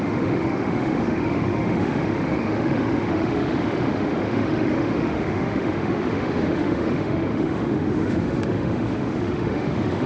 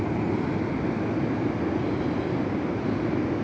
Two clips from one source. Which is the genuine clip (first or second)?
second